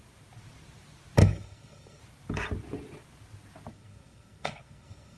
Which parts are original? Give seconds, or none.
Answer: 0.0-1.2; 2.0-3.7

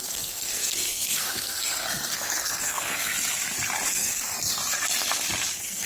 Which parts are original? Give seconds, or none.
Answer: 3.1-3.9; 4.6-5.5

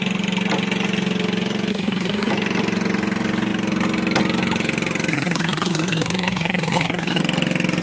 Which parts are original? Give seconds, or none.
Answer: 0.0-1.7; 2.3-5.1; 7.2-7.8

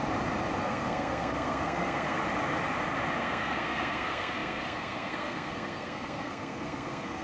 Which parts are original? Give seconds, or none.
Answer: 0.0-0.6; 2.2-3.2

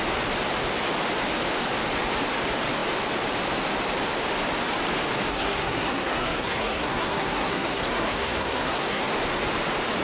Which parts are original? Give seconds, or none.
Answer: 0.0-5.3; 9.0-10.0

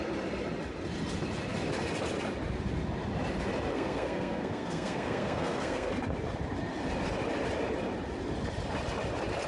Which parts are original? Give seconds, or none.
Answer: 0.0-3.7; 5.9-9.5